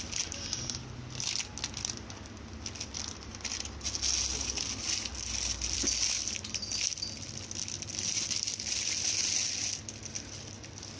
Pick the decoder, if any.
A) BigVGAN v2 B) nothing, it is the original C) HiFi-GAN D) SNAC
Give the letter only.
B